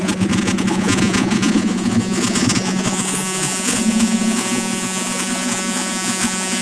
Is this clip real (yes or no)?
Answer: no